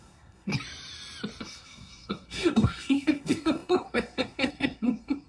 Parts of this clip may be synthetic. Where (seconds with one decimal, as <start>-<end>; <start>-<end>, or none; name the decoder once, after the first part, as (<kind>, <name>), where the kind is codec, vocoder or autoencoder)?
0.0-0.5 (codec, SNAC); 1.4-5.3